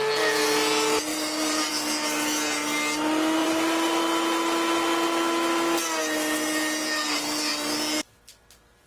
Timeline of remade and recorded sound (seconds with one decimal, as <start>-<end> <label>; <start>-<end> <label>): 0.0-1.1 recorded; 1.1-1.7 remade; 1.7-3.4 recorded; 3.4-4.0 remade; 4.0-8.9 recorded